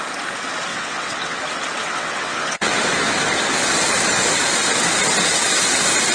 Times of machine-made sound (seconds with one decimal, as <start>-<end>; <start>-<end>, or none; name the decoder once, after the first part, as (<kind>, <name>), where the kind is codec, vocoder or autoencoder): 0.7-1.4 (vocoder, WaveNeXt); 1.8-2.8